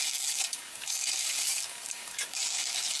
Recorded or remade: remade